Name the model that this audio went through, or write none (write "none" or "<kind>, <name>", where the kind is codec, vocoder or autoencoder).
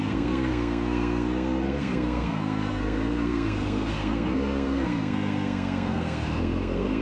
codec, SNAC